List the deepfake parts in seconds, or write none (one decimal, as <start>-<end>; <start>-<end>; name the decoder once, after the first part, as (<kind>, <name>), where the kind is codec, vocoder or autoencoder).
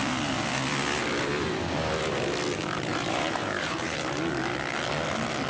2.9-4.2 (vocoder, BigVGAN v2)